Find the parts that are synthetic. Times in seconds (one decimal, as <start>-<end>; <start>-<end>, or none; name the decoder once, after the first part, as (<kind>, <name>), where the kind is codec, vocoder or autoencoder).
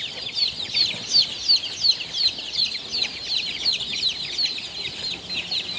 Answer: none